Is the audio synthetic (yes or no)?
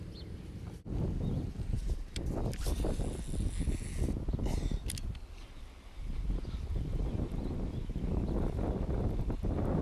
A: no